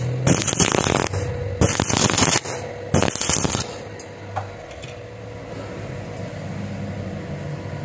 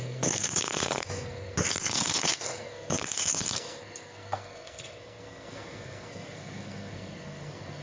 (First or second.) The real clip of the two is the first